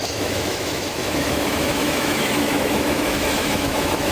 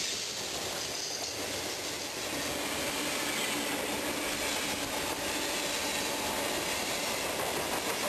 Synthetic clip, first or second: first